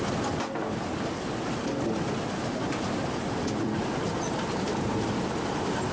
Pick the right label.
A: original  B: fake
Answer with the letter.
A